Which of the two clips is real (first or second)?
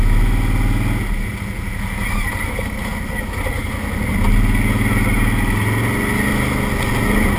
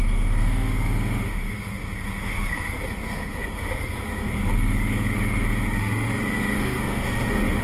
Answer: first